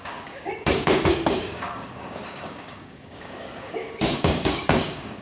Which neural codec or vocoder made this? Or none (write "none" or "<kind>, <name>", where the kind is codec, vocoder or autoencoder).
codec, DAC